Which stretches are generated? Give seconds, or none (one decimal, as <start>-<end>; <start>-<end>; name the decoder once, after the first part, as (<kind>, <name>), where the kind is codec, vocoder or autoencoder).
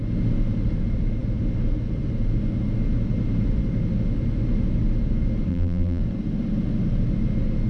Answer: 5.5-6.0 (vocoder, BigVGAN v2)